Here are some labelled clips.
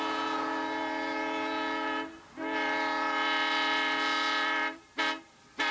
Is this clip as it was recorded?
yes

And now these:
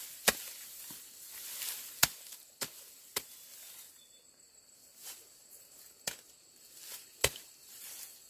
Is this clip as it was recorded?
yes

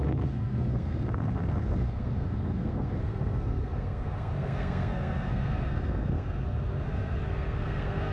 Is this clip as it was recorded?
no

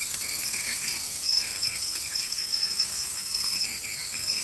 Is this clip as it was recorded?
no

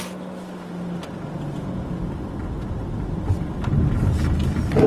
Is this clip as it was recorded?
yes